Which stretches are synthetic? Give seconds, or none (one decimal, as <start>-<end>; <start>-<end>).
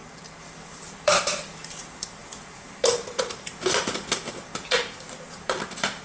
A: 0.0-3.6; 4.3-6.0